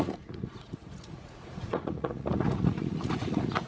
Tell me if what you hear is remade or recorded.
remade